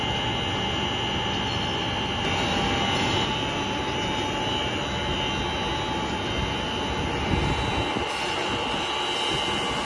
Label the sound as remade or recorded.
recorded